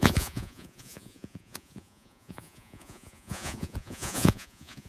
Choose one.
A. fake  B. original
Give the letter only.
A